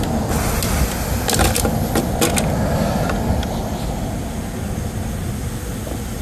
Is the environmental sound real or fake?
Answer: real